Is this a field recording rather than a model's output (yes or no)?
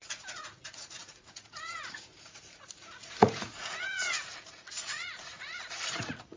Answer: no